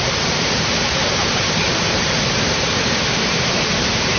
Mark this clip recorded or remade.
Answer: remade